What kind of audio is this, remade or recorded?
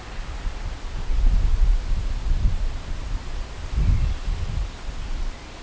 recorded